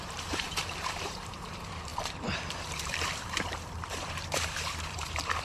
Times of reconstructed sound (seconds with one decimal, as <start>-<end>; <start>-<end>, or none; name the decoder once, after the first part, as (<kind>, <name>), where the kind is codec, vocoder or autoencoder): 0.0-5.4 (vocoder, BigVGAN v2)